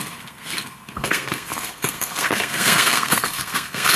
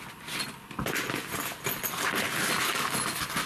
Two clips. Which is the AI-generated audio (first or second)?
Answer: first